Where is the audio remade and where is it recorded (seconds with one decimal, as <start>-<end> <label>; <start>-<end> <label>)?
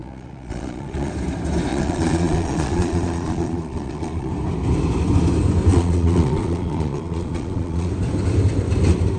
0.0-1.1 remade; 1.1-1.7 recorded; 1.7-4.3 remade; 4.3-5.7 recorded; 5.7-7.9 remade; 7.9-9.2 recorded